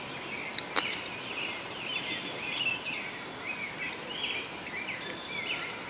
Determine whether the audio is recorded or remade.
recorded